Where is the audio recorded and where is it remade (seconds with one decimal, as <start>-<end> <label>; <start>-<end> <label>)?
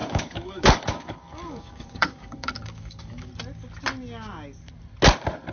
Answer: 0.0-3.3 remade; 3.3-5.5 recorded